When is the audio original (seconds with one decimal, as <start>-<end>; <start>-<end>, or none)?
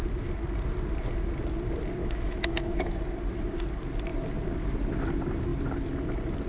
0.0-2.0; 2.9-6.5